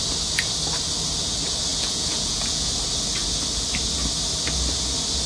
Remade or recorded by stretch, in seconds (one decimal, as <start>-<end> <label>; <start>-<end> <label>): 0.0-1.7 recorded; 1.7-2.7 remade; 2.7-5.3 recorded